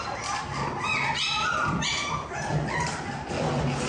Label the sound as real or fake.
real